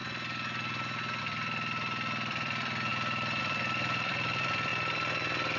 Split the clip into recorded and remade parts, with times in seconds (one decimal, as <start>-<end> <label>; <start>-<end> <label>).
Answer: 0.0-1.2 recorded; 1.2-2.9 remade; 2.9-3.4 recorded; 3.4-4.7 remade; 4.7-5.6 recorded